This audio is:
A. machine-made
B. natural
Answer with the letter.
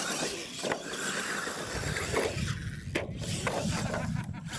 B